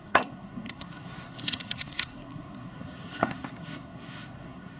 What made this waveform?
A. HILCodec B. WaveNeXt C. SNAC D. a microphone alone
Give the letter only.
C